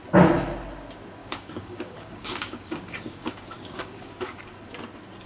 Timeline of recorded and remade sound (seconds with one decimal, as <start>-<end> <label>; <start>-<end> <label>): 0.0-1.2 recorded; 1.2-4.4 remade; 4.4-5.3 recorded